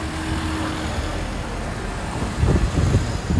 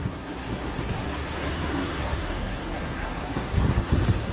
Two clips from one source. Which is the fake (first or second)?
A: second